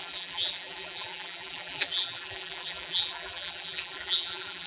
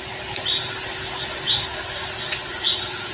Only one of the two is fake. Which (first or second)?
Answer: first